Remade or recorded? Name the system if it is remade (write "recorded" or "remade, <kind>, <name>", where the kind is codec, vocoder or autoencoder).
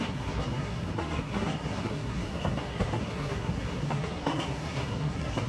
remade, codec, SNAC